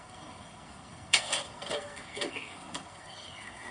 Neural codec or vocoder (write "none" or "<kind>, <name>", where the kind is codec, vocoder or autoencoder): codec, SNAC